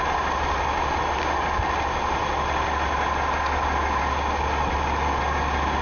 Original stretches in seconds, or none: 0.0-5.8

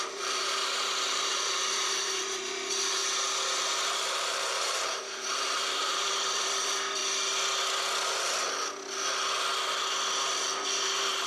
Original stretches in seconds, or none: 3.0-3.9; 7.0-10.8

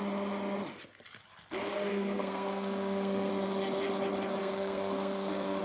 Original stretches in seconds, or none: 0.0-1.9; 3.3-4.4